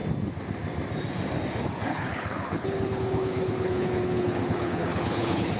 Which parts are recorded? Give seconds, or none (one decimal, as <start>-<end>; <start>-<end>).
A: 0.0-1.9